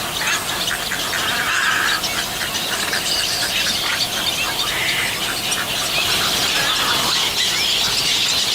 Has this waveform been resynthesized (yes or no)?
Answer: no